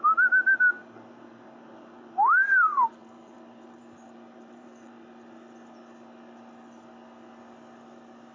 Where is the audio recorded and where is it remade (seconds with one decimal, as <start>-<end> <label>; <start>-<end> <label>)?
0.0-0.8 recorded; 0.8-4.9 remade; 4.9-8.3 recorded